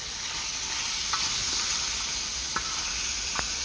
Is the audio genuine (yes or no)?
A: yes